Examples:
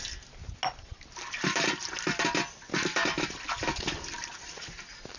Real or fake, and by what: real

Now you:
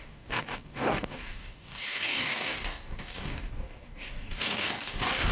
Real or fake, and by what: fake, codec, DAC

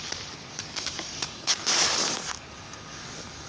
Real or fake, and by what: fake, codec, DAC